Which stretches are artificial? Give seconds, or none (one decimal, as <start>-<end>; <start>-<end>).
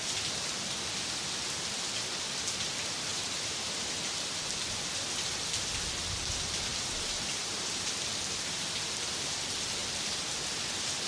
3.1-4.4; 6.7-8.1; 9.8-11.1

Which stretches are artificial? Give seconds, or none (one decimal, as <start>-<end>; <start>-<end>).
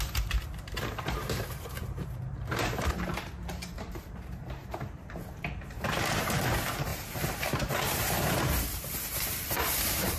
0.0-10.2